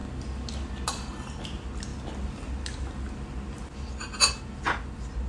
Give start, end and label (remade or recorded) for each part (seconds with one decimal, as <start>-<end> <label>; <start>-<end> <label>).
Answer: 0.0-5.3 recorded